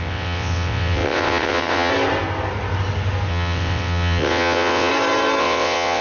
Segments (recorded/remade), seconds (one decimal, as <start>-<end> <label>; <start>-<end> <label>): 0.0-1.9 remade; 1.9-3.3 recorded; 3.3-4.9 remade; 4.9-5.4 recorded; 5.4-6.0 remade